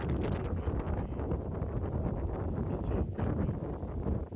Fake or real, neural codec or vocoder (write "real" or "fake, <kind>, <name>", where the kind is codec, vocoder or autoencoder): real